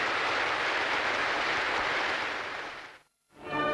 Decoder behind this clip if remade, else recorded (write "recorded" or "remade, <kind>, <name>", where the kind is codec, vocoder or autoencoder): recorded